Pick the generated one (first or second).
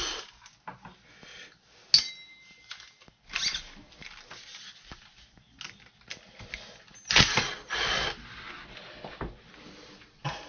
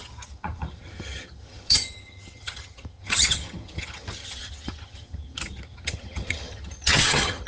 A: second